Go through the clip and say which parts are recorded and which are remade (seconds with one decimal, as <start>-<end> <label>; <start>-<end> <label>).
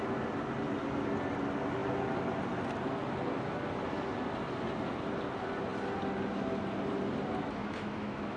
0.0-7.6 recorded; 7.6-8.4 remade